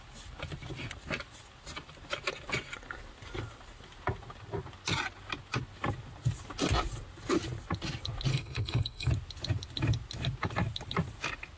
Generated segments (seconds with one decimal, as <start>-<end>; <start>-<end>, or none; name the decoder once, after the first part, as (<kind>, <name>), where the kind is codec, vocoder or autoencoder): 8.3-9.1 (codec, SNAC)